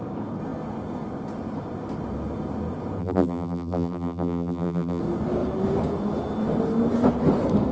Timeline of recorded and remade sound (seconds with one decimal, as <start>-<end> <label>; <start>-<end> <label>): 0.0-3.0 recorded; 3.0-5.0 remade; 5.0-7.7 recorded